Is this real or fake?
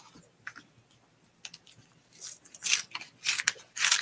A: real